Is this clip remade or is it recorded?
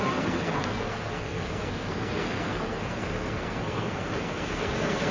remade